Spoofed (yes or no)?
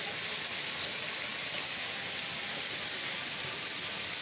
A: no